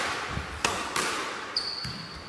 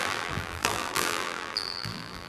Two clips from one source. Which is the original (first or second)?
first